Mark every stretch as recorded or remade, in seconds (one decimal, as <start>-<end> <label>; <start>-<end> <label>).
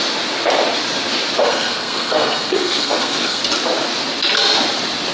0.0-1.4 recorded; 1.4-3.4 remade; 3.4-5.1 recorded